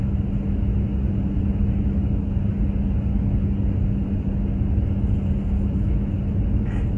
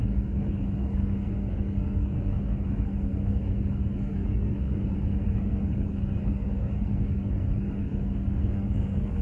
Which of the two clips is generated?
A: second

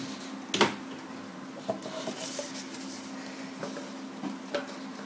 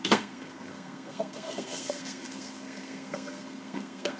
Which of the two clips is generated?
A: second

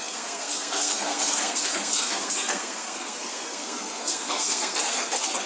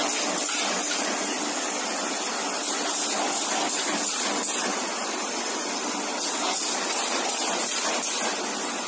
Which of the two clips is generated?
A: first